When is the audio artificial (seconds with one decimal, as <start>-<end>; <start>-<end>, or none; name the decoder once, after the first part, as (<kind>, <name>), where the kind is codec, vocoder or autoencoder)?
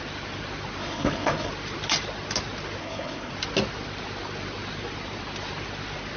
0.8-1.5 (codec, HILCodec); 2.8-3.3